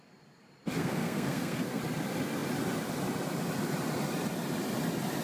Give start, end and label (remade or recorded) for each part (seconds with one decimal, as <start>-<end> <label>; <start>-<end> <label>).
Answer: 0.0-0.8 recorded; 0.8-1.8 remade; 1.8-5.2 recorded